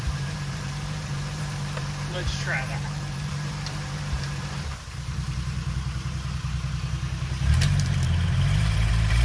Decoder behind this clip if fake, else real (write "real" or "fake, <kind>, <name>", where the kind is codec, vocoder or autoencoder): fake, vocoder, BigVGAN v2